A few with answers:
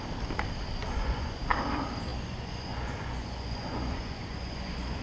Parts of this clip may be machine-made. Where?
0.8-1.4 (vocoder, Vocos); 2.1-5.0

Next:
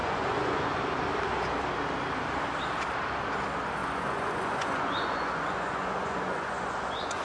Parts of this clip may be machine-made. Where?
0.0-0.8 (vocoder, Vocos); 3.8-7.2

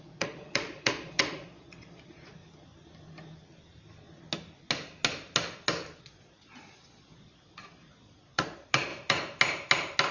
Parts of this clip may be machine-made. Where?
0.0-2.4 (vocoder, Vocos); 6.0-8.9